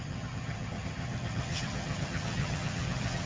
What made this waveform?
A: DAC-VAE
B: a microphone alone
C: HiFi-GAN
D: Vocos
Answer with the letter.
C